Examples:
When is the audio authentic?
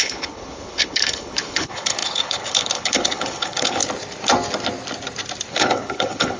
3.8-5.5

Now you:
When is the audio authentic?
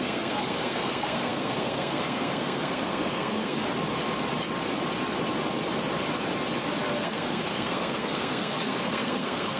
3.6-7.0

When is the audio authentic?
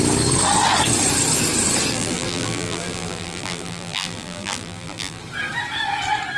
0.0-1.9; 5.2-6.4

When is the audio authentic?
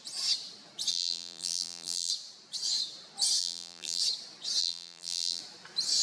0.0-0.9; 2.1-3.4; 4.0-4.6; 5.4-6.0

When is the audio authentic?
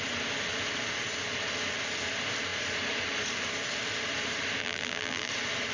0.0-4.6; 5.3-5.7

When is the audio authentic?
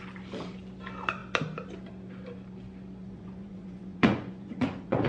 0.0-3.0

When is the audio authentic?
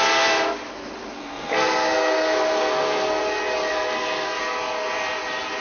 0.0-1.1; 3.2-3.7; 4.4-5.6